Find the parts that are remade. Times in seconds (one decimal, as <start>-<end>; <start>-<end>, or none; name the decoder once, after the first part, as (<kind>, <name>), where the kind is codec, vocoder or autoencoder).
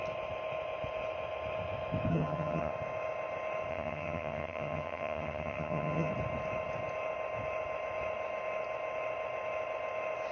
2.1-2.7 (vocoder, HiFi-GAN); 3.7-6.1